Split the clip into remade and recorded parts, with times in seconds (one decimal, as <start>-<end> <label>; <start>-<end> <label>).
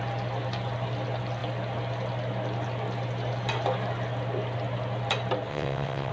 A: 0.0-5.5 recorded; 5.5-6.1 remade